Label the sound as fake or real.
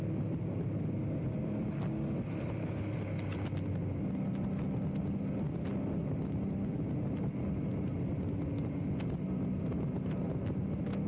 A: real